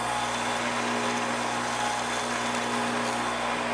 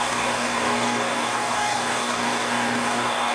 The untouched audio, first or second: first